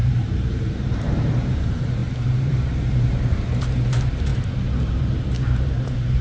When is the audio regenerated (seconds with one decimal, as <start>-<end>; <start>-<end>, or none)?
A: 0.0-4.3; 4.9-6.2